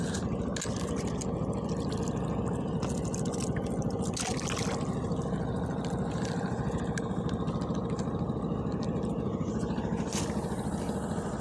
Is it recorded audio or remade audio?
recorded